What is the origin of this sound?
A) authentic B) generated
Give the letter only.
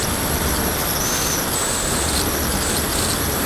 A